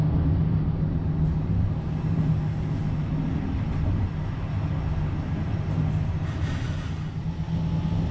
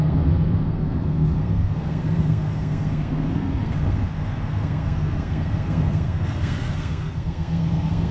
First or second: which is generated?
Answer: second